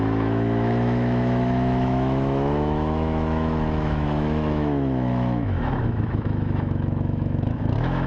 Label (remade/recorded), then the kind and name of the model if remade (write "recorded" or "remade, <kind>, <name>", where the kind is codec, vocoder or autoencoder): remade, autoencoder, DAC-VAE